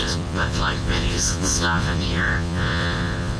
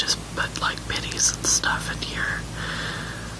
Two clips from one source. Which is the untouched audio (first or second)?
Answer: second